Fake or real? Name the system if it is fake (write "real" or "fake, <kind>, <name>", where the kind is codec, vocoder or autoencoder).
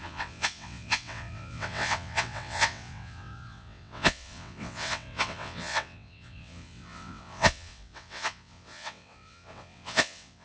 fake, vocoder, WaveNeXt